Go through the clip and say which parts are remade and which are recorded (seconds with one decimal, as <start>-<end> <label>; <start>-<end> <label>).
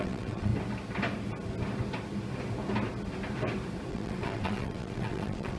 0.0-0.5 remade; 0.5-3.9 recorded; 3.9-5.6 remade